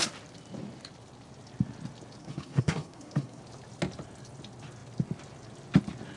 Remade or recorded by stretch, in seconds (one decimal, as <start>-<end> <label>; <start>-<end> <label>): 0.0-2.2 recorded; 2.2-3.4 remade; 3.4-6.2 recorded